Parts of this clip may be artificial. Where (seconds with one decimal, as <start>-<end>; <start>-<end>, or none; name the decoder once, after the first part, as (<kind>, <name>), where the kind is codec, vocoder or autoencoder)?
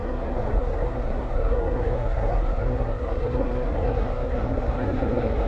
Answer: 0.0-5.5 (codec, SNAC)